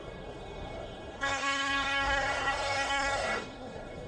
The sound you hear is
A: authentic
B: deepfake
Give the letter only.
B